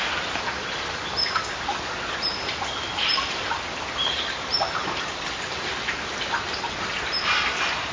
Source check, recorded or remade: recorded